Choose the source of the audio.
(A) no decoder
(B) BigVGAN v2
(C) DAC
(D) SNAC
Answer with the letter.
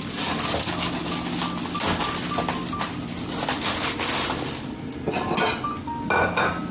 A